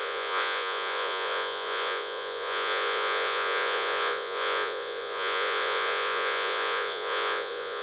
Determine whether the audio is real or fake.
fake